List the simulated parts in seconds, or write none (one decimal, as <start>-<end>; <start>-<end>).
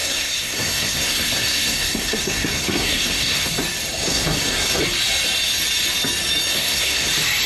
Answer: 0.0-3.5; 4.1-4.8; 6.5-7.1